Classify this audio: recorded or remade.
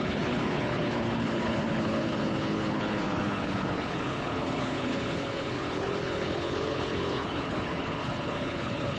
remade